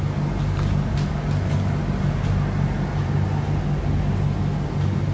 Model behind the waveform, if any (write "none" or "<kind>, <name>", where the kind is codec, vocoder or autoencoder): none